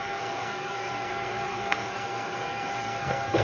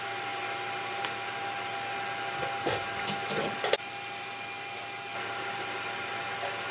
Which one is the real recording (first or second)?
second